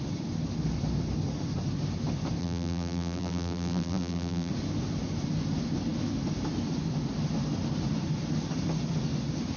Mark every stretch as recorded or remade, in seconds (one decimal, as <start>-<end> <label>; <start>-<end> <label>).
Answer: 0.0-2.4 recorded; 2.4-4.5 remade; 4.5-9.6 recorded